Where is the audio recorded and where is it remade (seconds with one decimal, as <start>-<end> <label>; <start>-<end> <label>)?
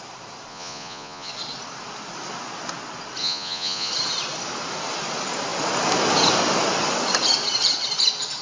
0.0-0.5 recorded; 0.5-1.3 remade; 1.3-3.2 recorded; 3.2-3.9 remade; 3.9-8.4 recorded